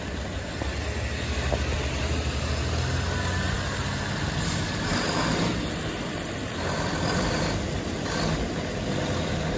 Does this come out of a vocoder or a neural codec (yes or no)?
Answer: no